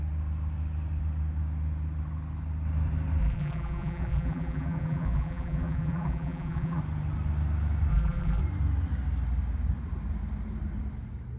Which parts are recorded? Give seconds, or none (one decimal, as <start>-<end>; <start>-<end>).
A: 0.0-3.2; 6.8-7.9; 8.4-11.4